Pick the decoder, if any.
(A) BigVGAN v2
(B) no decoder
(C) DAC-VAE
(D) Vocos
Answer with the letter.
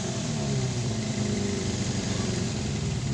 A